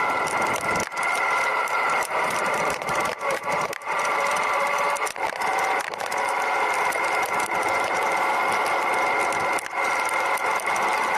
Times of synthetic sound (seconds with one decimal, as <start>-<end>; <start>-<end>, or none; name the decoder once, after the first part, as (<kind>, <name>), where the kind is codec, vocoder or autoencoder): 1.5-3.9 (vocoder, BigVGAN v2)